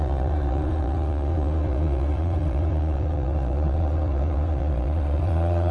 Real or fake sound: fake